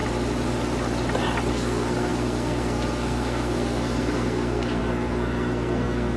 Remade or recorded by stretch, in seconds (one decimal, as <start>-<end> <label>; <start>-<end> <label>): 0.0-1.5 recorded; 1.5-6.2 remade